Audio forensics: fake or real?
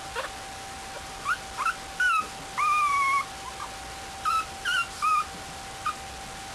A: real